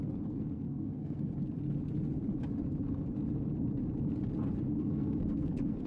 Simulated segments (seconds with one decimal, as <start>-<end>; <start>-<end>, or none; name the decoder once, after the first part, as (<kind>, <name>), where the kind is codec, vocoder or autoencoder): 0.0-1.3 (codec, SNAC); 4.8-5.9